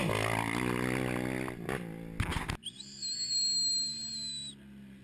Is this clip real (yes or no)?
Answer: yes